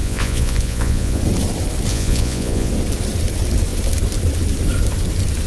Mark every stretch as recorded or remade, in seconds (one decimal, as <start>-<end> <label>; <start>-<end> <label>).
0.0-1.2 remade; 1.2-1.9 recorded; 1.9-2.7 remade; 2.7-5.5 recorded